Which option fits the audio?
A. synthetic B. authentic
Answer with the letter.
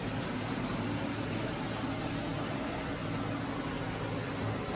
B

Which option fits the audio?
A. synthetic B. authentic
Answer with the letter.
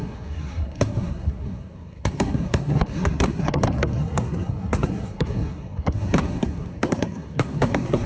A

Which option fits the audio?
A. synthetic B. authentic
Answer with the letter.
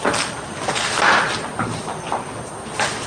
B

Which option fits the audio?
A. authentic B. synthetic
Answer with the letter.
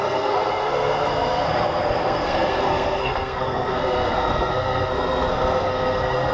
B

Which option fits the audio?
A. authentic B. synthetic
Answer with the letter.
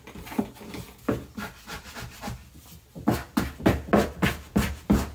A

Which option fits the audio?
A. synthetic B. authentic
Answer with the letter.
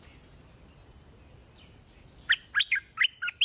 B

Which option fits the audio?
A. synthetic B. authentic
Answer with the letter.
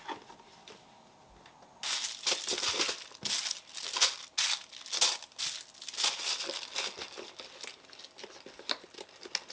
B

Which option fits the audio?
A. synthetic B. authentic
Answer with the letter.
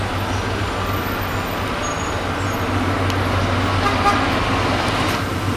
B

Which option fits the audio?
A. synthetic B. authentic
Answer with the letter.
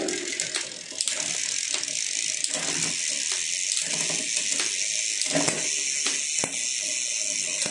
B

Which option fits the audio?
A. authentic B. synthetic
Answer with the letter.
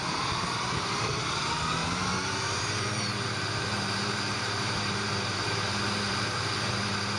B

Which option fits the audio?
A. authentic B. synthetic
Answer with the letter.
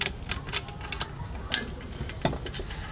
A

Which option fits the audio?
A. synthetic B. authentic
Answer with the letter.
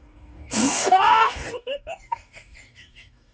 A